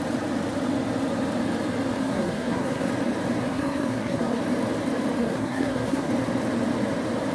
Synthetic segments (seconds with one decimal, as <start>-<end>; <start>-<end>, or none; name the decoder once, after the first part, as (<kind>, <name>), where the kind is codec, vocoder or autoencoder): 2.0-2.9 (codec, SNAC); 3.4-4.4; 5.2-6.1